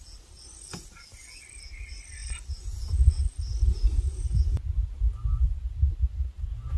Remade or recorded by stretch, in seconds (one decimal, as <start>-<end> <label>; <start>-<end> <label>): 0.0-6.8 recorded